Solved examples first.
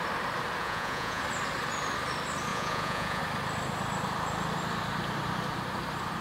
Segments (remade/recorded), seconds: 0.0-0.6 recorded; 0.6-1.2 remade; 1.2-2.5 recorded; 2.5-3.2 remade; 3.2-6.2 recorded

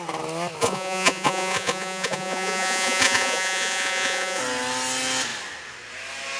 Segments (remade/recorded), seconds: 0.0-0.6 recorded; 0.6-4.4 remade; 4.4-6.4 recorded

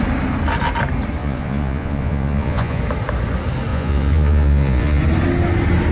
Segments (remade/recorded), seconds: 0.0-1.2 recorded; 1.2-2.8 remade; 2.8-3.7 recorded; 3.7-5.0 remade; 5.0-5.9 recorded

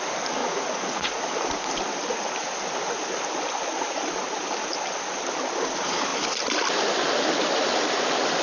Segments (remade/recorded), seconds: 0.0-0.4 recorded; 0.4-1.2 remade; 1.2-8.4 recorded

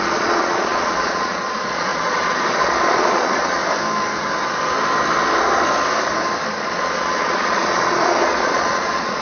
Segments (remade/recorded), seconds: 0.0-3.6 remade; 3.6-6.6 recorded; 6.6-9.2 remade

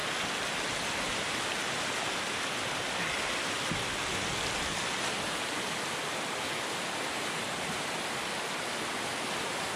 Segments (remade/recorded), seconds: 0.0-9.8 recorded

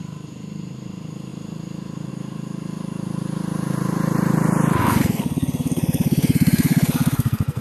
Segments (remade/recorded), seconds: 0.0-4.8 recorded; 4.8-7.6 remade